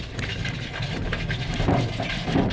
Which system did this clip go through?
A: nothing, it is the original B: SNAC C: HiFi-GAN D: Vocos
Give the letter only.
A